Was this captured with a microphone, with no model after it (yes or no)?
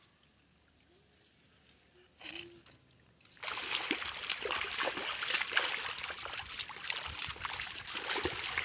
yes